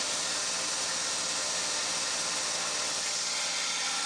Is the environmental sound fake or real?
real